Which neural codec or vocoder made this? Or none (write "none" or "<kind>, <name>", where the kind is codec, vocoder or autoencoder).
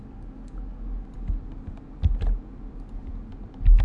none